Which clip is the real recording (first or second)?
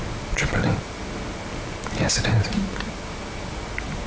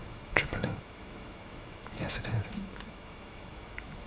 first